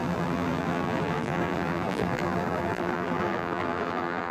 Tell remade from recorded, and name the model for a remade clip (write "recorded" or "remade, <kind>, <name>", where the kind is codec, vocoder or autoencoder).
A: remade, vocoder, BigVGAN v2